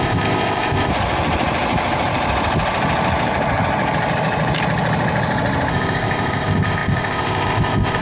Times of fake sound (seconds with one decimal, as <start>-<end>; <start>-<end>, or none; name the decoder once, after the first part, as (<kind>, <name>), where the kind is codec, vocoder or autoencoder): 0.0-0.9 (codec, ZipCodec); 5.7-8.0